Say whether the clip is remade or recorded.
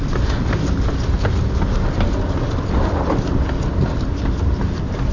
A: recorded